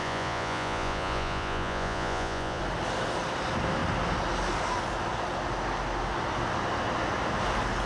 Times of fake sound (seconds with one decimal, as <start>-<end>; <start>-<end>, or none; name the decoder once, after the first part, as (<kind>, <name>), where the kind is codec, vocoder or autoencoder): 0.0-2.6 (vocoder, Vocos)